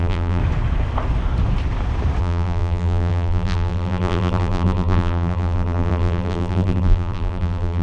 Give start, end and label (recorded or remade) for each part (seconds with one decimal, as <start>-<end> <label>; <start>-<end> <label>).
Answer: 0.0-0.4 remade; 0.4-2.2 recorded; 2.2-7.8 remade